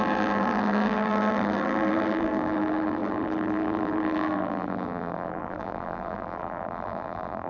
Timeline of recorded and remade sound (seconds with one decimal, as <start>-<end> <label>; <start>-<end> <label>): 0.0-7.5 remade